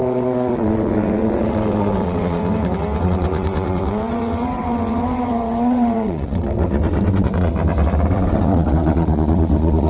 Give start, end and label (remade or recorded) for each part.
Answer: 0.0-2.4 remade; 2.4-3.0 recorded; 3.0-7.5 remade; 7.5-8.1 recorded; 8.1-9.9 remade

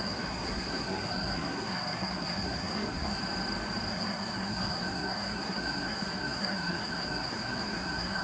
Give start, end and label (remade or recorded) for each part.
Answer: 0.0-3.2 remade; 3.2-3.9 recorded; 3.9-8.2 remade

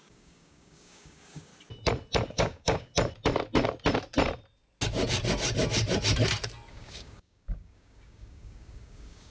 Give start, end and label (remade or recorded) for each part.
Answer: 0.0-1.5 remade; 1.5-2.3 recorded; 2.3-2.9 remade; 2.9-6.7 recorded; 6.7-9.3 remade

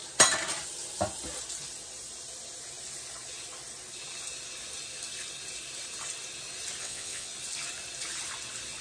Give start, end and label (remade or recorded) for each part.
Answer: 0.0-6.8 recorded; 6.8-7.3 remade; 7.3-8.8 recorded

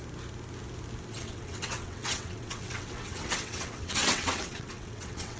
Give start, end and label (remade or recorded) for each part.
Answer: 0.0-1.1 recorded; 1.1-5.4 remade

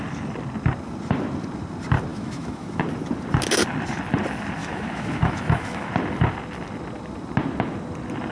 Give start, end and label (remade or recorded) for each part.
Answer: 0.0-2.1 recorded; 2.1-2.8 remade; 2.8-4.6 recorded; 4.6-5.9 remade; 5.9-8.3 recorded

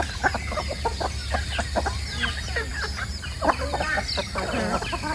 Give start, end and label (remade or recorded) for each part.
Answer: 0.0-5.1 recorded

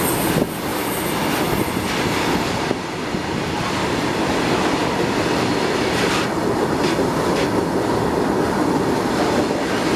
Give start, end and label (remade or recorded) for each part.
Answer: 0.0-10.0 recorded